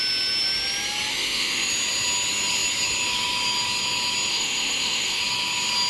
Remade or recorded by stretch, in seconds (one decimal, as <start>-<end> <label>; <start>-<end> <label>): 0.0-1.1 recorded; 1.1-1.7 remade; 1.7-4.3 recorded; 4.3-5.2 remade; 5.2-5.9 recorded